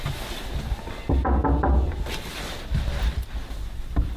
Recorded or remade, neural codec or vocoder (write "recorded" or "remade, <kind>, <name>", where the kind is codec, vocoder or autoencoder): recorded